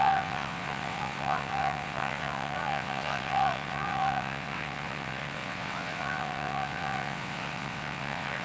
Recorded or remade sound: remade